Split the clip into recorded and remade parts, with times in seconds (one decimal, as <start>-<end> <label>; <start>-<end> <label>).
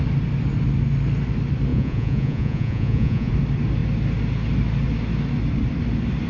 0.0-1.7 recorded; 1.7-3.3 remade; 3.3-6.3 recorded